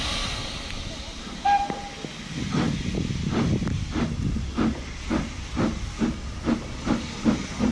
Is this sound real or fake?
real